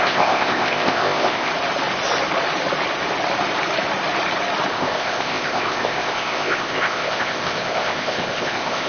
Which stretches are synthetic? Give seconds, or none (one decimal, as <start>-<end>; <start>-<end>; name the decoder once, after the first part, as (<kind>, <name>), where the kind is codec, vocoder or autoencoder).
0.0-1.5 (codec, ZipCodec); 4.7-8.9